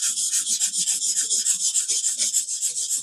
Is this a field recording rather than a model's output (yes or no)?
yes